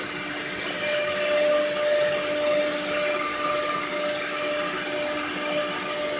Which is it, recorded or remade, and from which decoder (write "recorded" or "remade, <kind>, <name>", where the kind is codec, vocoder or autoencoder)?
recorded